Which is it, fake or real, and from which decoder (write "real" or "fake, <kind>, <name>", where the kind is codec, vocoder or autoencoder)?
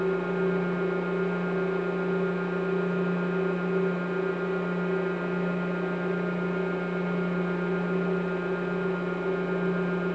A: real